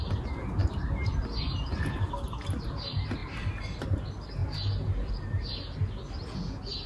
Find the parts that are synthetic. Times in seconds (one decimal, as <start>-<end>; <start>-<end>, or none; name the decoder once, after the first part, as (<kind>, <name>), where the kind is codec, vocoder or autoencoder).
none